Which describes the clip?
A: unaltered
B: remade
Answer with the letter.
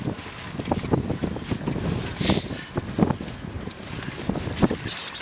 A